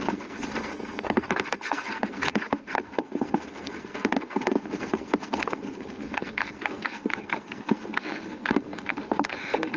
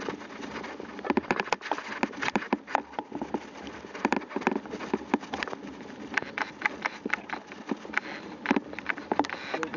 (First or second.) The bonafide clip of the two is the second